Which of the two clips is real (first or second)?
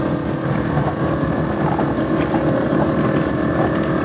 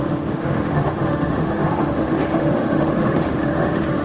first